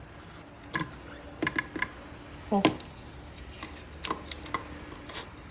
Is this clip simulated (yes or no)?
no